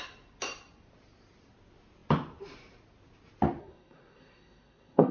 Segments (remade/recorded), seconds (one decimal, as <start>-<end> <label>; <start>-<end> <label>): 0.0-3.6 recorded; 3.6-5.1 remade

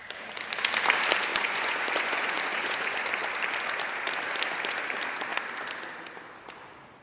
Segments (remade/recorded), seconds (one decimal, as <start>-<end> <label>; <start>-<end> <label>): 0.0-1.3 recorded; 1.3-3.1 remade; 3.1-7.0 recorded